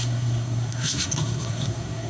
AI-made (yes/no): yes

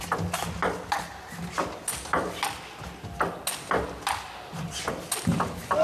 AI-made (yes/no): no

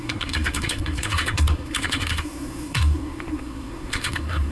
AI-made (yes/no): yes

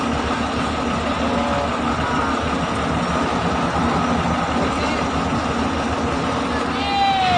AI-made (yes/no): no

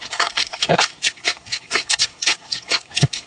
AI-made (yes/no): yes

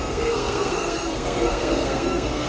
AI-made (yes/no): yes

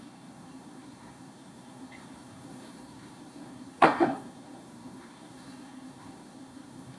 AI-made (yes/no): yes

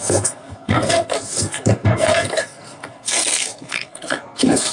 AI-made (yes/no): yes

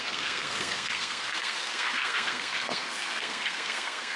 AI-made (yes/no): yes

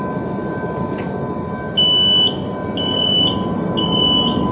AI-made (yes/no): no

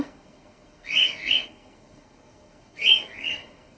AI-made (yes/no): yes